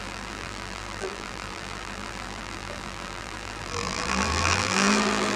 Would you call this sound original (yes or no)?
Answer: no